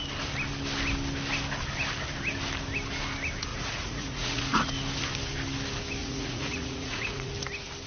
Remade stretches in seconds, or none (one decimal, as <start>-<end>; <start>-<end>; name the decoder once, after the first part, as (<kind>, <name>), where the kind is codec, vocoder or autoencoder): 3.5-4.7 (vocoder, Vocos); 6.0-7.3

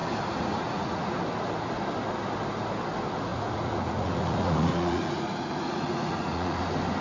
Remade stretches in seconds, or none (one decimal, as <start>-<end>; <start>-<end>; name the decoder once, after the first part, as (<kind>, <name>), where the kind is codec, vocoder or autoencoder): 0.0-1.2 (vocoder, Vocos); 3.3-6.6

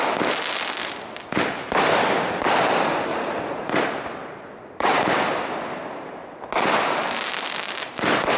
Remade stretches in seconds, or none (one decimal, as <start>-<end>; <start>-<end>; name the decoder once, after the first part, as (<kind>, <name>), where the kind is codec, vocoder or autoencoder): 3.1-3.7 (vocoder, Vocos); 4.2-5.0

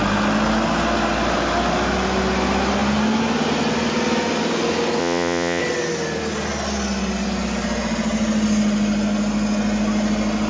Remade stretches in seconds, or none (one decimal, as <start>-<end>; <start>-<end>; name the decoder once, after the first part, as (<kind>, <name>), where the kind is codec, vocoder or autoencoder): 5.0-5.6 (vocoder, Vocos)

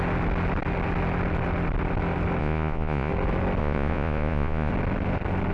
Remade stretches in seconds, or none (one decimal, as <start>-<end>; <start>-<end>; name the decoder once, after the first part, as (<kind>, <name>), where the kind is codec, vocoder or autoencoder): 2.4-3.1 (vocoder, Vocos); 3.6-4.7